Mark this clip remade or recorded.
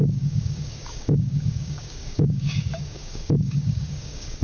remade